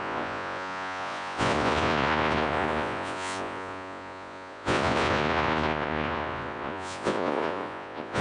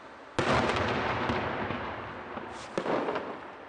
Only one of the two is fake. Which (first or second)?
first